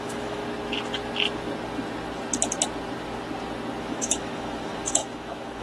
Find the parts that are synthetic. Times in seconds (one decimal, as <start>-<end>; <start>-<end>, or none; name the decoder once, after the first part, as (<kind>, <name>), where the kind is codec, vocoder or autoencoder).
0.0-0.4 (autoencoder, DAC-VAE); 3.8-5.6